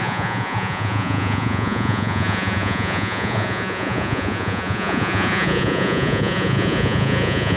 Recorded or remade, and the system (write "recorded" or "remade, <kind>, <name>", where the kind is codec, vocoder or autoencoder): remade, vocoder, Vocos